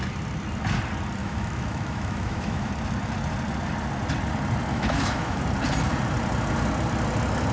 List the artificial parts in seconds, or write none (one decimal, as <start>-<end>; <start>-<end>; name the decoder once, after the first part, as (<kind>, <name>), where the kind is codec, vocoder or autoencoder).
1.2-2.7 (autoencoder, DAC-VAE); 4.7-5.4